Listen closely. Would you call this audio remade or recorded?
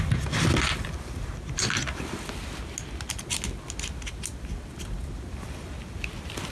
recorded